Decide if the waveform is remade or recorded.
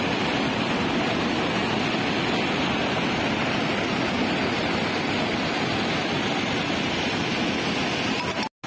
recorded